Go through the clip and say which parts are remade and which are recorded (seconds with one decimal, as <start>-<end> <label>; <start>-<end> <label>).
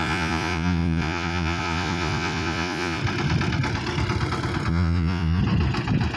0.0-3.0 remade; 3.0-4.7 recorded; 4.7-5.4 remade; 5.4-6.2 recorded